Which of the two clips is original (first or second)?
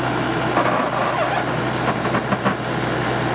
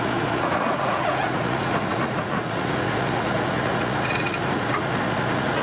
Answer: first